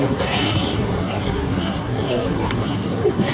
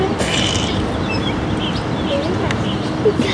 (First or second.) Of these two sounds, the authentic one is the second